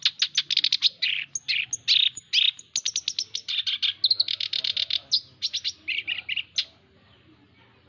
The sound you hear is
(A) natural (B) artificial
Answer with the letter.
A